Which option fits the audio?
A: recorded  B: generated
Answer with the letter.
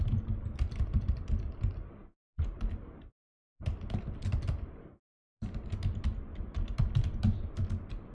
A